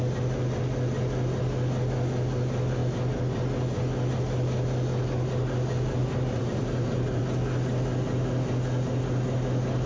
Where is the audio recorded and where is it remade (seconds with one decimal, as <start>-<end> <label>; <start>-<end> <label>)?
0.0-6.0 recorded; 6.0-7.2 remade; 7.2-9.9 recorded